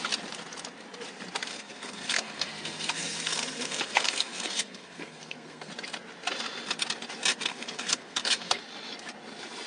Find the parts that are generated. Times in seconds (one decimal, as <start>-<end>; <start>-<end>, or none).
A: 1.5-5.7; 7.3-8.6